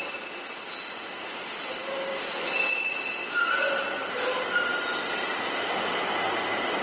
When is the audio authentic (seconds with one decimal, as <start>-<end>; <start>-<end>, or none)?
0.0-6.8